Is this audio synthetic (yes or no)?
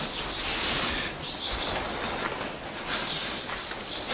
no